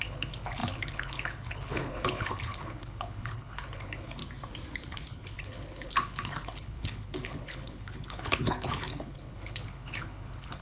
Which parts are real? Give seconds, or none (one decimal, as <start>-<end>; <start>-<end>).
4.2-4.7